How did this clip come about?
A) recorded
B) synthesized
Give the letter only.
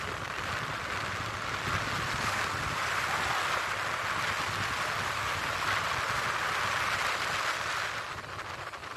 A